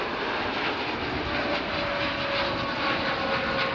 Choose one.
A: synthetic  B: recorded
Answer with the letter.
B